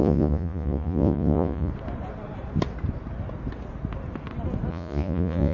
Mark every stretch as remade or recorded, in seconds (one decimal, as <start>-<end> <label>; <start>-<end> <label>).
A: 0.0-1.7 remade; 1.7-4.7 recorded; 4.7-5.5 remade